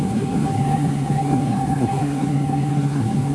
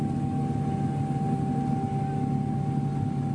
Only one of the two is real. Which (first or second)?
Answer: second